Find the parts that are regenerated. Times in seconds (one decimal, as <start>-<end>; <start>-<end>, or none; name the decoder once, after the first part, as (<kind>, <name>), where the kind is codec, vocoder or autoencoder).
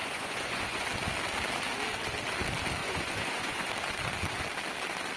0.0-0.9 (vocoder, Vocos); 2.8-3.7